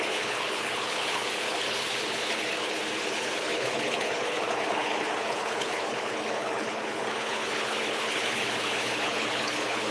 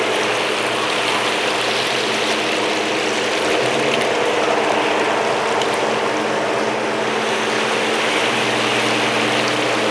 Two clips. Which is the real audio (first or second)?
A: second